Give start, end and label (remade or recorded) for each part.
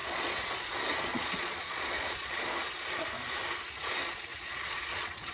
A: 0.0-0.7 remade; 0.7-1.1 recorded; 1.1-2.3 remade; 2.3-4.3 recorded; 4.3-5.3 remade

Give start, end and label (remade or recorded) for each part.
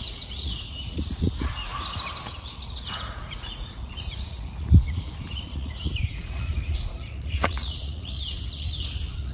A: 0.0-1.7 remade; 1.7-2.3 recorded; 2.3-9.3 remade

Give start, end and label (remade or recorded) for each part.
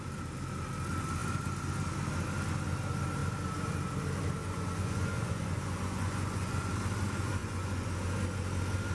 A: 0.0-4.4 recorded; 4.4-6.7 remade; 6.7-7.4 recorded; 7.4-7.9 remade; 7.9-8.9 recorded